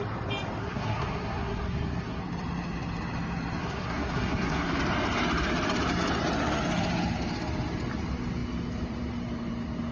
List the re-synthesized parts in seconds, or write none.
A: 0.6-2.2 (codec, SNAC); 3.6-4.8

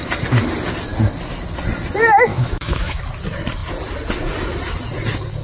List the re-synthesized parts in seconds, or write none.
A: 2.3-3.0 (autoencoder, DAC-VAE)

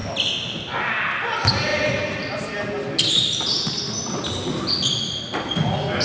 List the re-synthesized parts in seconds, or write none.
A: none

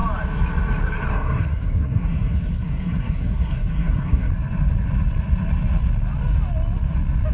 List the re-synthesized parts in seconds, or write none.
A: 1.1-4.3 (codec, SNAC)